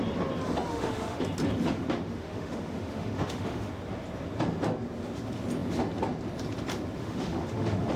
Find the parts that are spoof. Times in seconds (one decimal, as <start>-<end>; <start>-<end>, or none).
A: 0.7-1.2; 1.6-3.7; 7.0-8.0